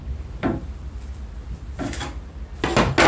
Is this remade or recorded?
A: recorded